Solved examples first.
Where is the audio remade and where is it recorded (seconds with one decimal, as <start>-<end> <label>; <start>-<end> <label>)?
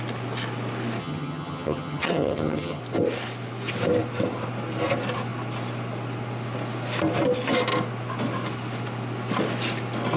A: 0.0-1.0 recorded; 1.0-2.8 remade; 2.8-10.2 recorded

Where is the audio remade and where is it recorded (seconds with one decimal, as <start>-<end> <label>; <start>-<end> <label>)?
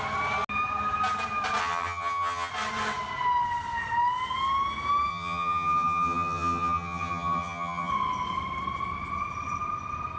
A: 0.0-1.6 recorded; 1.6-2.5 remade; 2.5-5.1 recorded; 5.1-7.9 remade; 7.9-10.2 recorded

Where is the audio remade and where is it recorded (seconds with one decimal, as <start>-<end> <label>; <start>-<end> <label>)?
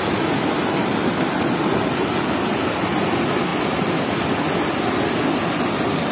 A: 0.0-6.1 recorded